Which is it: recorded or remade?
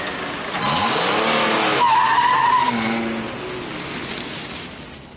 recorded